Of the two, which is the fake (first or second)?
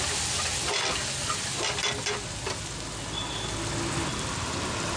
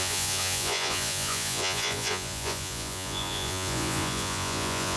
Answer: second